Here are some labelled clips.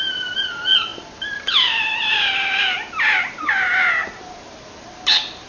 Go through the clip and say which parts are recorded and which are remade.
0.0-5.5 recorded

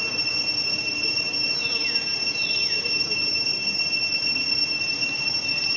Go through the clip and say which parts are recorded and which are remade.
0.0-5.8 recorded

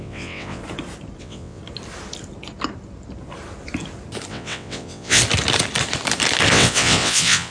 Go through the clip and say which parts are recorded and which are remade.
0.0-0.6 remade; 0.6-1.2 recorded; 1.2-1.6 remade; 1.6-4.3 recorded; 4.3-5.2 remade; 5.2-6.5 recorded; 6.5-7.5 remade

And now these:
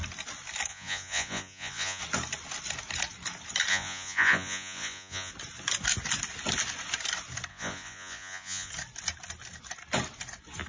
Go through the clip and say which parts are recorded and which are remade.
0.0-0.7 recorded; 0.7-2.0 remade; 2.0-3.7 recorded; 3.7-5.3 remade; 5.3-7.5 recorded; 7.5-8.7 remade; 8.7-10.7 recorded

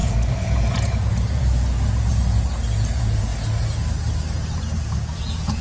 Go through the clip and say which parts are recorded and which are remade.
0.0-2.2 remade; 2.2-2.9 recorded; 2.9-3.3 remade; 3.3-4.6 recorded; 4.6-5.6 remade

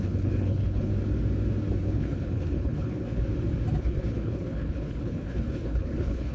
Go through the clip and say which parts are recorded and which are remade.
0.0-0.9 remade; 0.9-1.8 recorded; 1.8-3.2 remade; 3.2-3.8 recorded; 3.8-6.3 remade

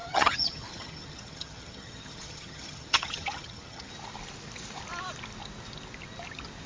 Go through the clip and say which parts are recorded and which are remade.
0.0-3.9 remade; 3.9-6.7 recorded